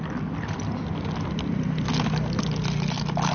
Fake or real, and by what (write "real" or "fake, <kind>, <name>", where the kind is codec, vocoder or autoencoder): real